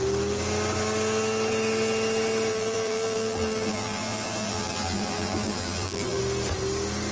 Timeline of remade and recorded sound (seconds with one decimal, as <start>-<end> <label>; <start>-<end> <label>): 0.0-2.5 recorded; 2.5-6.2 remade; 6.2-7.1 recorded